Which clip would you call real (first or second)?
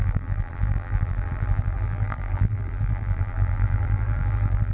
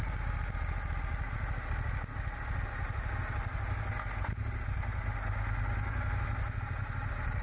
second